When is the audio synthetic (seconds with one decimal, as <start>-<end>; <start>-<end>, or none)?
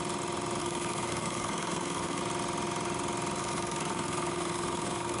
0.6-2.2; 3.4-5.2